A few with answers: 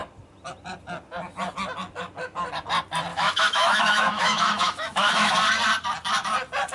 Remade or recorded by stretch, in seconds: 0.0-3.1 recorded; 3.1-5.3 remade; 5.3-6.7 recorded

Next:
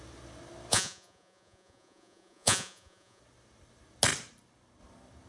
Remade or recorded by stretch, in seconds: 0.0-0.7 recorded; 0.7-3.2 remade; 3.2-5.3 recorded

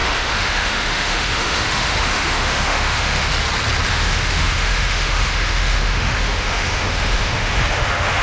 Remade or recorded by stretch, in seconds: 0.0-3.3 remade; 3.3-3.9 recorded; 3.9-8.2 remade

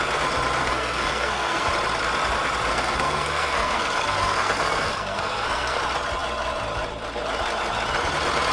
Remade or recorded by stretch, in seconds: 0.0-0.6 recorded; 0.6-1.7 remade; 1.7-2.7 recorded; 2.7-5.8 remade; 5.8-8.5 recorded

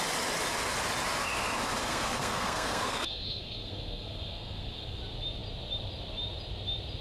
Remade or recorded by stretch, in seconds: 0.0-1.8 recorded; 1.8-5.0 remade; 5.0-7.0 recorded